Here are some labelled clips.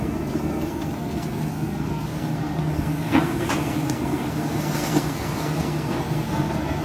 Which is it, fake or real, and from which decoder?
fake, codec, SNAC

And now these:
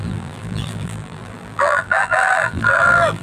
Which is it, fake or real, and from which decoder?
fake, vocoder, BigVGAN v2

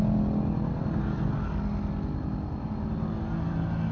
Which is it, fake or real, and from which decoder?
real